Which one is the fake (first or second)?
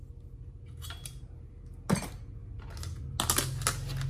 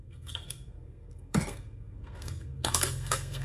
second